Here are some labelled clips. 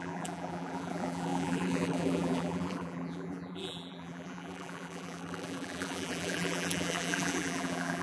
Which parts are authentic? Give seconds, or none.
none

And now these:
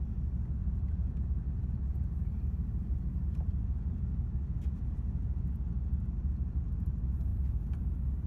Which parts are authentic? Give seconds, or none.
0.0-0.6; 5.4-7.3

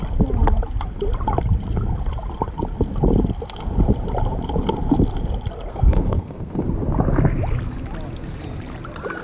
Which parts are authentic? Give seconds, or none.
0.0-5.7; 6.6-9.2

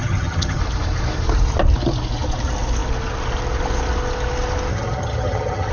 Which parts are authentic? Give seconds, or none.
0.6-4.7